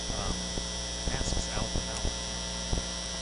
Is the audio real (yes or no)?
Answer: yes